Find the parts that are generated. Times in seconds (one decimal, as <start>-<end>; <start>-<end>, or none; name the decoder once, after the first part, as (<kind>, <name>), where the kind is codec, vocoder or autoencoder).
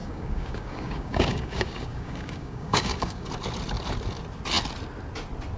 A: 0.0-3.3 (codec, DAC)